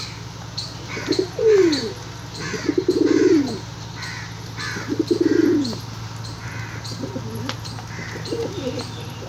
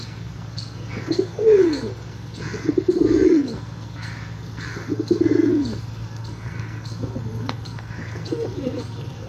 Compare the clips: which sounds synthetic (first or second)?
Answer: second